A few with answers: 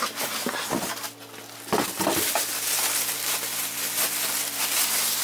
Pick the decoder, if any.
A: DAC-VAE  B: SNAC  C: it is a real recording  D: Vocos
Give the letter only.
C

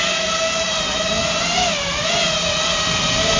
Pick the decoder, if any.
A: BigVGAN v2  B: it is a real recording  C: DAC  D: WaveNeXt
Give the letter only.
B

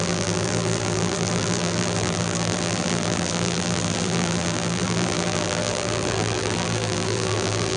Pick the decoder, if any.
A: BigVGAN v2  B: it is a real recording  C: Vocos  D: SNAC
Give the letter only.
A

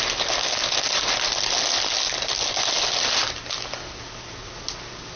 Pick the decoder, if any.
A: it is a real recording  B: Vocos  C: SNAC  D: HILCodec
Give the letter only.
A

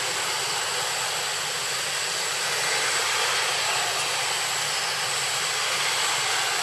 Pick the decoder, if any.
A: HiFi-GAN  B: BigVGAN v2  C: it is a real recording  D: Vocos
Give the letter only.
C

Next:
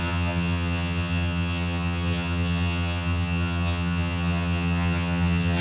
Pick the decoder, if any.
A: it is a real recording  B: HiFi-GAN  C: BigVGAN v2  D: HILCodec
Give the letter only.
B